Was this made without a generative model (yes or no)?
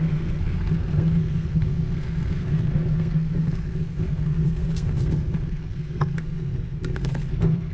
no